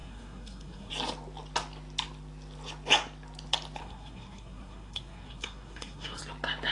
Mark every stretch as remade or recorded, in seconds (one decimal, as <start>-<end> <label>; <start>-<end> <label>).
0.0-0.9 remade; 0.9-3.8 recorded; 3.8-6.2 remade; 6.2-6.7 recorded